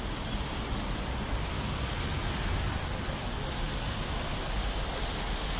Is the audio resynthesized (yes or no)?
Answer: no